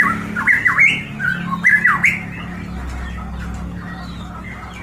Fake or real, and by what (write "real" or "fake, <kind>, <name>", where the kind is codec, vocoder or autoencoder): real